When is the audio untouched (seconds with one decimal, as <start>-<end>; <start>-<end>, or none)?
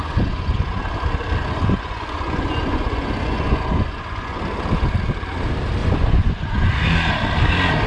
0.8-1.4; 4.4-5.8; 6.7-7.9